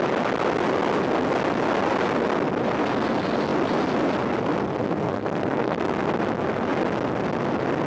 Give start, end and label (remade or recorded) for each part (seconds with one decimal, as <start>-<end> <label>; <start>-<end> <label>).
0.0-4.8 recorded; 4.8-5.8 remade; 5.8-7.9 recorded